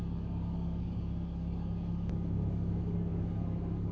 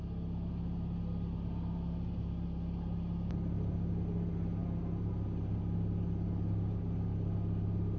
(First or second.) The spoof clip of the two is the first